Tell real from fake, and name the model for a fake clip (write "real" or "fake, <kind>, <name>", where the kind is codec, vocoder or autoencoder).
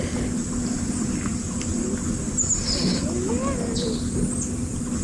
real